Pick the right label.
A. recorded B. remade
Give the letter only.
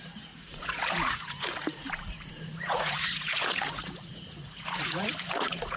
B